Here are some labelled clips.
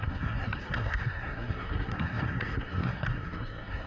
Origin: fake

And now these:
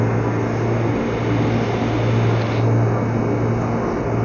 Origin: real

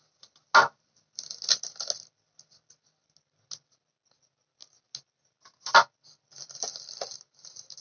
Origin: real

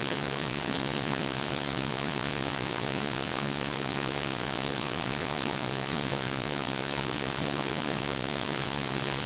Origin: fake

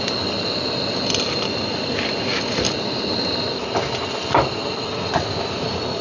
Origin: real